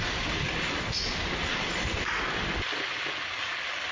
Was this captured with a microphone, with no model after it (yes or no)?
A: yes